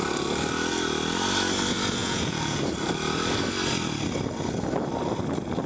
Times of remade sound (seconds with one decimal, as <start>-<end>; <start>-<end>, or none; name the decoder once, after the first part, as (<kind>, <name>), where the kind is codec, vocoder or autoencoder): 2.0-2.6 (vocoder, Vocos)